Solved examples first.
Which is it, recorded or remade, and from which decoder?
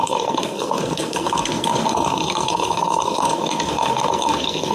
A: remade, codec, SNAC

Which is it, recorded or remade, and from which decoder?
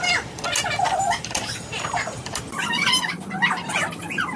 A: recorded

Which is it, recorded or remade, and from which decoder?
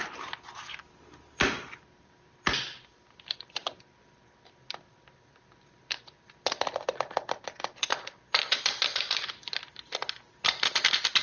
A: recorded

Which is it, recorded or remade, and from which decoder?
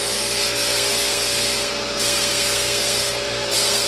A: remade, codec, SNAC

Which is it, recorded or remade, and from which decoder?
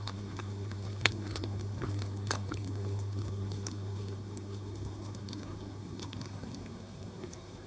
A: remade, codec, SNAC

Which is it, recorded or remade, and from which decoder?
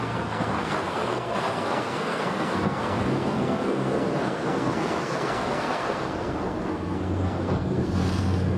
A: remade, codec, SNAC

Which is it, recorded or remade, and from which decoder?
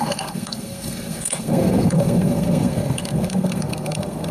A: remade, codec, SNAC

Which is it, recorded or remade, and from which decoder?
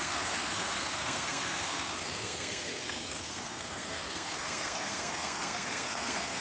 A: remade, codec, SNAC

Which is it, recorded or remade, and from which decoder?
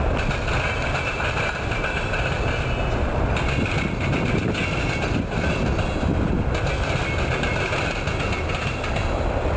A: recorded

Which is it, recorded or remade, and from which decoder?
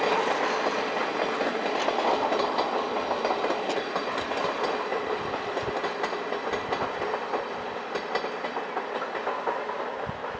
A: recorded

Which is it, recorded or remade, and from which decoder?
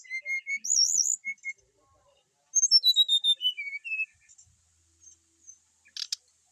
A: recorded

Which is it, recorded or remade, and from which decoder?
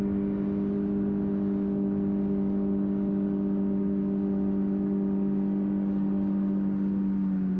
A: recorded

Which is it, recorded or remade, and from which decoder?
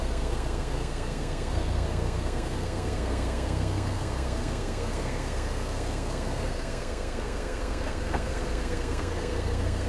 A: remade, codec, SNAC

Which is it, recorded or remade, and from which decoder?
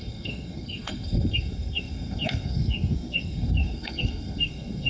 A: remade, codec, SNAC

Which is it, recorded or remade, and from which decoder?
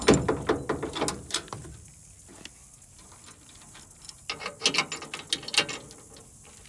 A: recorded